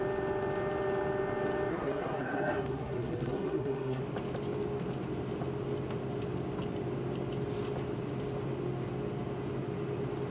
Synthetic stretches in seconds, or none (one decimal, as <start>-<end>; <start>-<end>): 1.7-4.0